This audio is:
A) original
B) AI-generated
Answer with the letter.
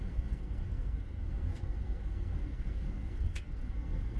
B